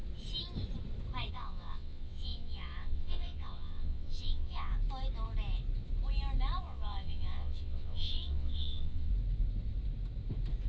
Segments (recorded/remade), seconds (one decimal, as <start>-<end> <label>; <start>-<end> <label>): 0.0-1.3 recorded; 1.3-4.7 remade; 4.7-6.6 recorded; 6.6-9.1 remade; 9.1-10.7 recorded